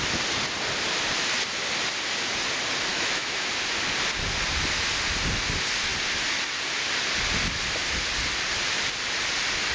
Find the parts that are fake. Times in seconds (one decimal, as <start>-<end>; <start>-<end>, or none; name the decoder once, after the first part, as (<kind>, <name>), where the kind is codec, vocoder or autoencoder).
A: 2.9-3.5 (autoencoder, DAC-VAE)